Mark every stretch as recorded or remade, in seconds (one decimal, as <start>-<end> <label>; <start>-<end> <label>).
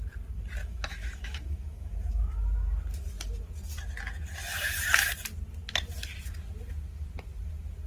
0.0-0.6 recorded; 0.6-1.9 remade; 1.9-7.9 recorded